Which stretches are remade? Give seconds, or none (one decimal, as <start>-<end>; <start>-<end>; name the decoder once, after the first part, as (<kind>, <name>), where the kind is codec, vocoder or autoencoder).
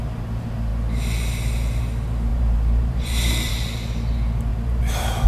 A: 2.3-3.5 (vocoder, BigVGAN v2); 4.5-5.3